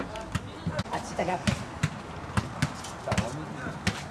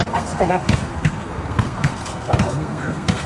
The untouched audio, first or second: first